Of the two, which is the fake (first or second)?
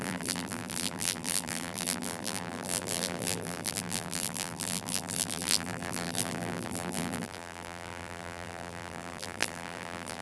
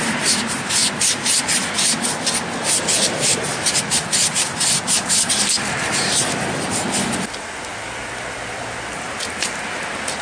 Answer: first